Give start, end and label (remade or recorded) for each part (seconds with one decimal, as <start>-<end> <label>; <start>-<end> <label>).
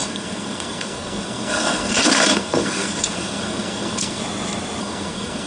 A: 0.0-4.2 remade; 4.2-4.8 recorded; 4.8-5.5 remade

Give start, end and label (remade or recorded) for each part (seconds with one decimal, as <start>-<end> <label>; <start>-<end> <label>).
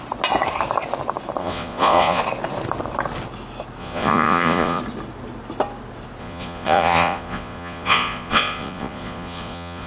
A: 0.0-1.4 recorded; 1.4-2.2 remade; 2.2-3.8 recorded; 3.8-4.8 remade; 4.8-6.2 recorded; 6.2-9.9 remade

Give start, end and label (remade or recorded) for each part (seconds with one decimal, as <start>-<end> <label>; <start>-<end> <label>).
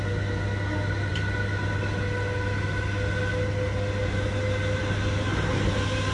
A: 0.0-6.1 recorded